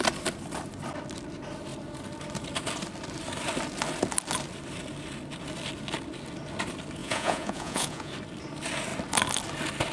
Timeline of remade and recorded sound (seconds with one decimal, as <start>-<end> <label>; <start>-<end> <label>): 0.0-7.0 recorded; 7.0-8.1 remade; 8.1-9.9 recorded